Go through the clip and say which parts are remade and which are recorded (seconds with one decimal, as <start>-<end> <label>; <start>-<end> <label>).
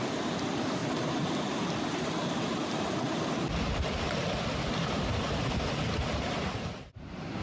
0.0-7.4 recorded